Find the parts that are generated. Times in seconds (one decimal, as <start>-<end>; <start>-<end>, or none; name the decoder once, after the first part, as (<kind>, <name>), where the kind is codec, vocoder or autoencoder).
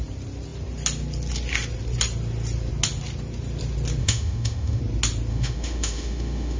4.0-4.8 (autoencoder, DAC-VAE); 5.3-6.6